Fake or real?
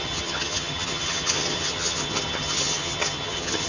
fake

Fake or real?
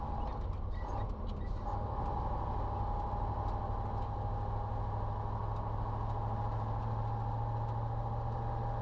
real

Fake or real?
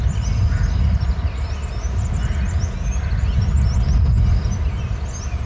real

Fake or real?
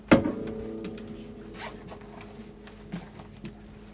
real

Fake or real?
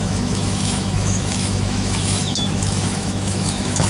fake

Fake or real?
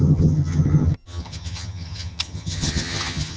fake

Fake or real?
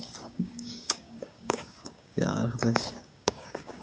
fake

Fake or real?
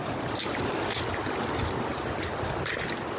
real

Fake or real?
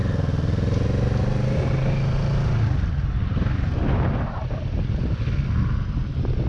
real